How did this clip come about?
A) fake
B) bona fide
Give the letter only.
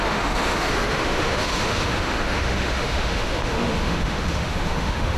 A